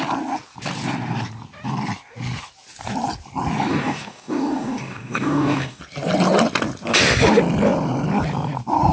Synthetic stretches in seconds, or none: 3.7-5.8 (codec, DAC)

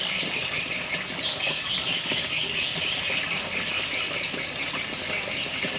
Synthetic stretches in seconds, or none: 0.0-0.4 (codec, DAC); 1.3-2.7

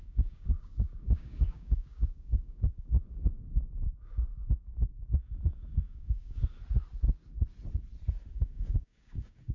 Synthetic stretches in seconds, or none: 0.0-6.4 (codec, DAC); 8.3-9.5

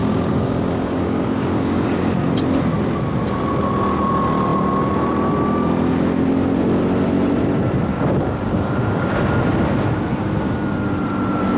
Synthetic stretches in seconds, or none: 0.0-2.0 (codec, DAC); 7.9-9.2

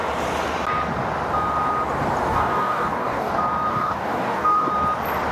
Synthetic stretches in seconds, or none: 2.3-3.3 (codec, DAC); 3.7-4.7

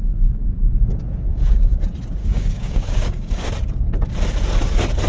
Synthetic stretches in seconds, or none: 1.3-1.8 (codec, DAC); 2.2-3.5